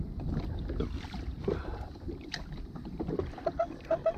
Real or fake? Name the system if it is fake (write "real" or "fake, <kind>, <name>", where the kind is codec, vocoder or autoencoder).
real